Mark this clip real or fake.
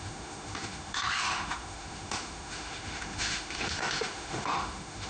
fake